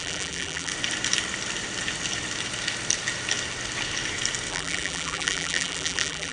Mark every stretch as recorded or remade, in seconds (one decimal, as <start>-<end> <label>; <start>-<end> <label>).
0.0-0.7 remade; 0.7-4.5 recorded; 4.5-6.3 remade